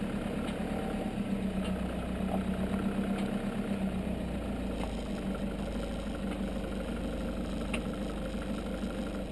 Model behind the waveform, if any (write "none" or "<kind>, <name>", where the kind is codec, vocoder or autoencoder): none